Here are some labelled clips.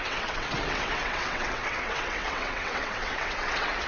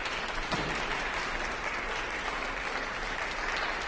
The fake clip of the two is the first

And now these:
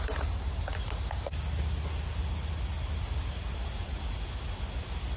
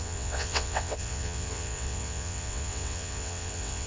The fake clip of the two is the second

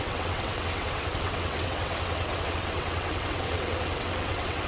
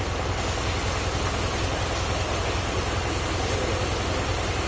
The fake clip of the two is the first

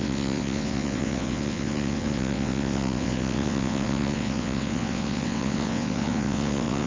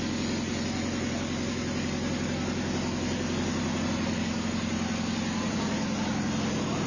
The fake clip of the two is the first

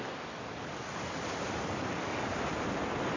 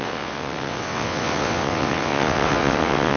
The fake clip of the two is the second